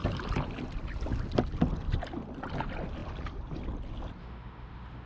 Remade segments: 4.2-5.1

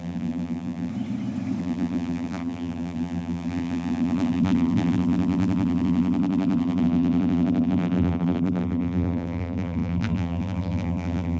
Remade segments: 0.0-0.9; 1.6-11.4

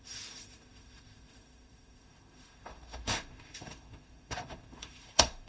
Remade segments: 0.0-5.5

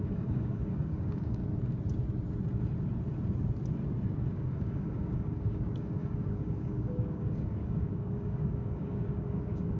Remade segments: 0.0-1.4; 4.3-9.8

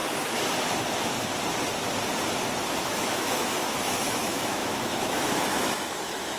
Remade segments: 2.8-6.4

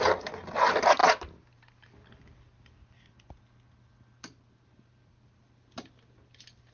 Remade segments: none

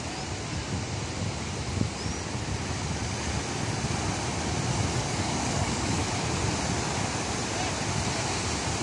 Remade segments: 5.0-6.0

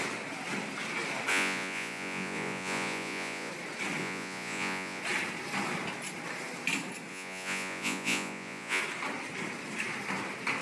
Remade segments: 1.3-3.5; 4.0-5.0; 7.1-8.8